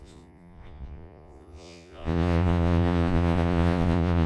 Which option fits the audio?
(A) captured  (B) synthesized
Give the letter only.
B